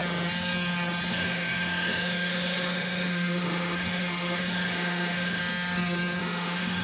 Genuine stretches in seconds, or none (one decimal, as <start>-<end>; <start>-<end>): 0.0-1.1; 5.4-6.2